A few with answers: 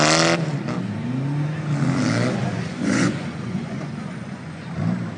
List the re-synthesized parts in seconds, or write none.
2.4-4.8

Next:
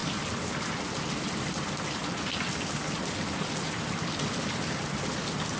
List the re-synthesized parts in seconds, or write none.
none

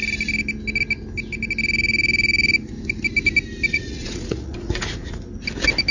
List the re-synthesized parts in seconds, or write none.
3.7-5.2

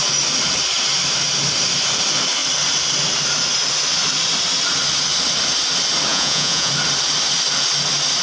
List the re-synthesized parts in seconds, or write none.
6.1-6.7

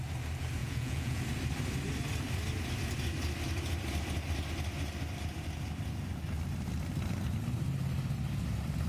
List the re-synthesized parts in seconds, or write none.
0.6-1.2

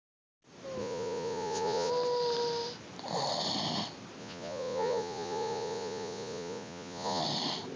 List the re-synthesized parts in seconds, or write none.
0.8-1.9; 4.2-7.2

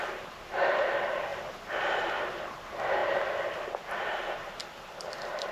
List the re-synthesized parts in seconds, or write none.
none

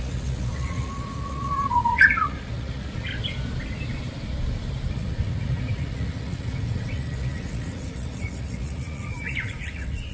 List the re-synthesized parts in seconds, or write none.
0.0-3.1; 4.9-10.1